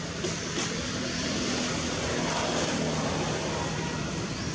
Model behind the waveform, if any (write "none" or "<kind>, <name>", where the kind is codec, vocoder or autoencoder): none